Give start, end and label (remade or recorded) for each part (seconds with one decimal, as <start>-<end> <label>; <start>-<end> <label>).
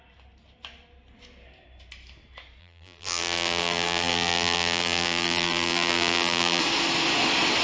0.0-2.6 recorded; 2.6-6.6 remade; 6.6-7.6 recorded